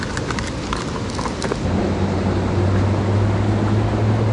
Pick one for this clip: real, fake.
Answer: real